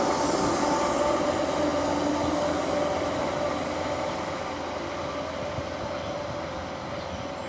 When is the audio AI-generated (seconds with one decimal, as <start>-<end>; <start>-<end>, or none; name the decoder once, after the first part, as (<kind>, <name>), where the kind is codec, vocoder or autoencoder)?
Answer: none